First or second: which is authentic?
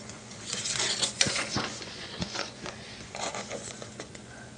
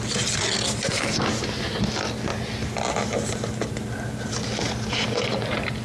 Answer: second